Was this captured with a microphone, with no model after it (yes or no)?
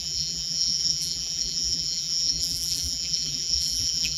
no